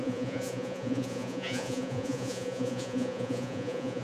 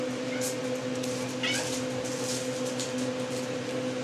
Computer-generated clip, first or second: first